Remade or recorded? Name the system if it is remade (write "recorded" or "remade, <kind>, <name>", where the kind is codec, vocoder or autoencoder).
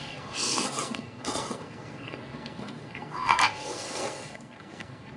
remade, codec, SNAC